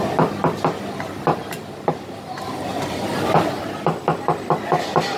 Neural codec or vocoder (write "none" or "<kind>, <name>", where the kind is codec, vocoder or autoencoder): none